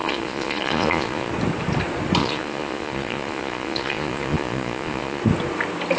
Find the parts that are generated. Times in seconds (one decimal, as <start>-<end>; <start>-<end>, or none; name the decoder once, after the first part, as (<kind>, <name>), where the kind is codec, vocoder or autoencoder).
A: 0.0-1.3 (vocoder, Vocos); 2.2-5.2